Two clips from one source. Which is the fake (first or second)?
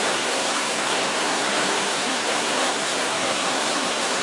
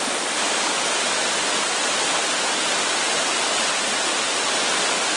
first